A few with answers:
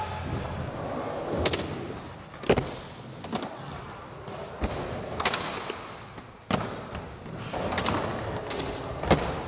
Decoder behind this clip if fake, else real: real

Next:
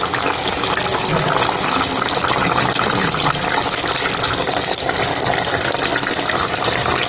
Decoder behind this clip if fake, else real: real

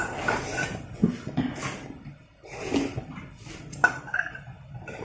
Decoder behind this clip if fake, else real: real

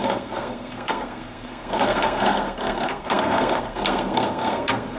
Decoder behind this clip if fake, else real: fake, codec, SNAC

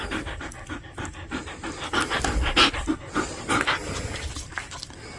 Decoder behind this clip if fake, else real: real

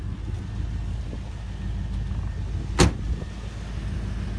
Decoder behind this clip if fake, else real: real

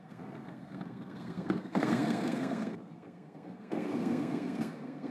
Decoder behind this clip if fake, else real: fake, codec, SNAC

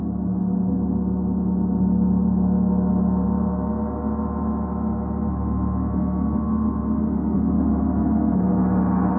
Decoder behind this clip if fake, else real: real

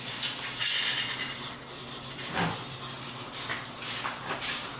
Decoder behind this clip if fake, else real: real